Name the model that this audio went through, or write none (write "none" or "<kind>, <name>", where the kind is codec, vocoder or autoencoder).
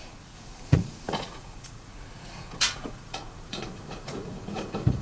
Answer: vocoder, Vocos